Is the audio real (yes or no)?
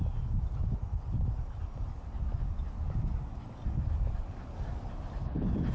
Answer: yes